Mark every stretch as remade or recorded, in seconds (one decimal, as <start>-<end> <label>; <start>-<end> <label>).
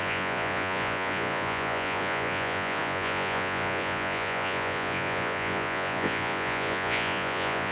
0.0-7.7 remade